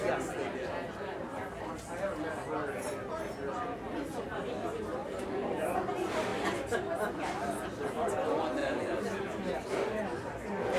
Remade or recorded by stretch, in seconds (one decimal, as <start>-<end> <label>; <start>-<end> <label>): 0.0-5.0 recorded; 5.0-5.8 remade; 5.8-8.6 recorded; 8.6-9.4 remade; 9.4-10.8 recorded